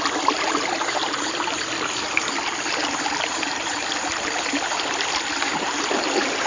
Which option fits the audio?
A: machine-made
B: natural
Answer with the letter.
B